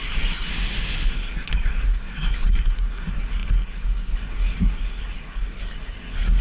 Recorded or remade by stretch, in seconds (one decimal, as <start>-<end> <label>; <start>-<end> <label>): 0.0-0.5 remade; 0.5-1.1 recorded; 1.1-6.4 remade